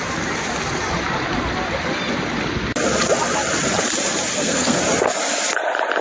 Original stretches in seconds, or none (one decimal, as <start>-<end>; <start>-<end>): 0.0-4.3; 4.8-6.0